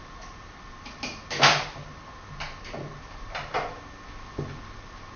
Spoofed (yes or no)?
no